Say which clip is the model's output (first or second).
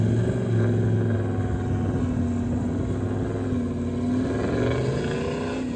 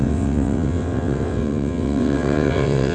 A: second